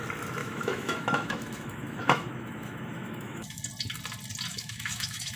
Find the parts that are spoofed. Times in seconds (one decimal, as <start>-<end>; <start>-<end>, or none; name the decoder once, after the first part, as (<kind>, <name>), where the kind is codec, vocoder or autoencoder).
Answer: 0.4-3.6 (autoencoder, DAC-VAE); 4.5-5.4